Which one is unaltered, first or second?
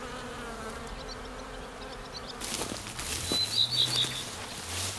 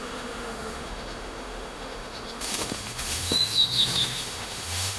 first